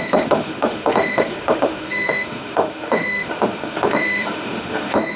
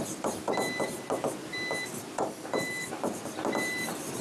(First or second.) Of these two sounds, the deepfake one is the first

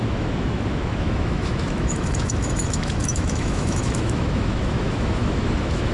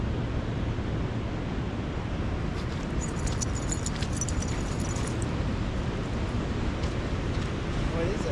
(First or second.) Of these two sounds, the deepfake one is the first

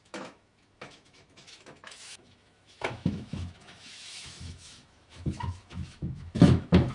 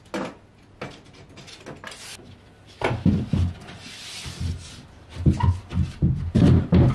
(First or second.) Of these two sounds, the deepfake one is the first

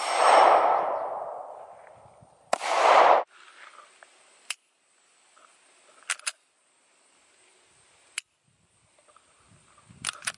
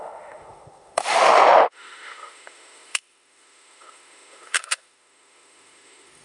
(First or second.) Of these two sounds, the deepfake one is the second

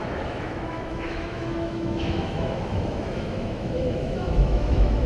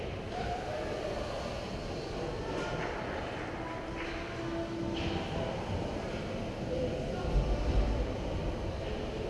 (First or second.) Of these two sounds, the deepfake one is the first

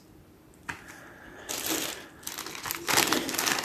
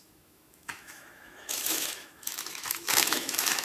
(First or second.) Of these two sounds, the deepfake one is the second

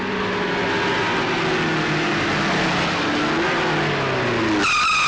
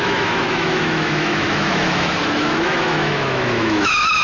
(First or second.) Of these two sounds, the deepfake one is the second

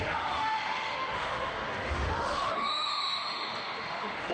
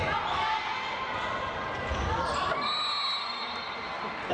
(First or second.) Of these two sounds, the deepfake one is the first